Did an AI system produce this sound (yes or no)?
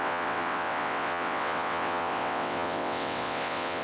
yes